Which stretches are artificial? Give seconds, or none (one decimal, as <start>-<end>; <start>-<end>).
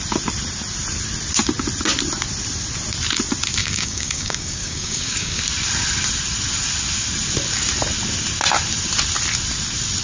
3.6-5.4